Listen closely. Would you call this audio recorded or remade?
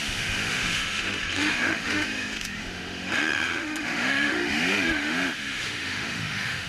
remade